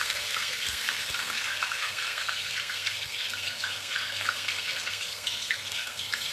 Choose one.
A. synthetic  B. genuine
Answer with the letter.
A